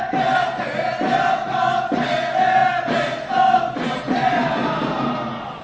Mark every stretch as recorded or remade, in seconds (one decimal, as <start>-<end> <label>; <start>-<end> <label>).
0.0-5.6 recorded

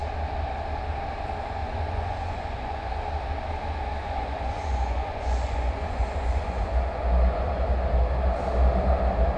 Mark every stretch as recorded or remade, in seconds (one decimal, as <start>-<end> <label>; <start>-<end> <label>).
0.0-1.6 recorded; 1.6-3.0 remade; 3.0-4.0 recorded; 4.0-7.6 remade; 7.6-9.4 recorded

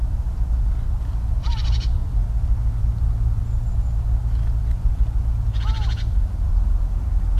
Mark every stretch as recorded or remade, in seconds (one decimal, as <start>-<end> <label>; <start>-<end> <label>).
0.0-1.4 recorded; 1.4-2.2 remade; 2.2-7.4 recorded